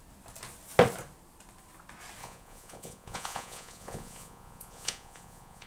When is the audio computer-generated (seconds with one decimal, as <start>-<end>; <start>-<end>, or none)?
2.2-5.7